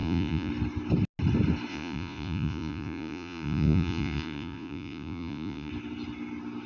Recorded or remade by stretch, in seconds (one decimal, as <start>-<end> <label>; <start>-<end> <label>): 0.0-0.5 remade; 0.5-1.7 recorded; 1.7-5.7 remade; 5.7-6.7 recorded